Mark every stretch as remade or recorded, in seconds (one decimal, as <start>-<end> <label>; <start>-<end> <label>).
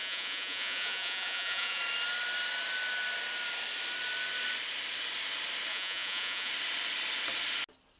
0.0-1.8 remade; 1.8-5.7 recorded; 5.7-6.5 remade; 6.5-8.0 recorded